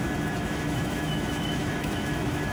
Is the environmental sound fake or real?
fake